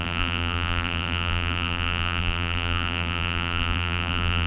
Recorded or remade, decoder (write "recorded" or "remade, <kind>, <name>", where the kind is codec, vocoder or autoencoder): remade, vocoder, BigVGAN v2